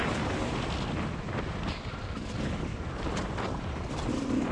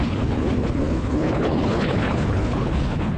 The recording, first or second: first